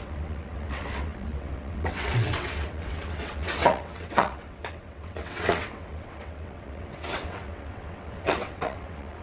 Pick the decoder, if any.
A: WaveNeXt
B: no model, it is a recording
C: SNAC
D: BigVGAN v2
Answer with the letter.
A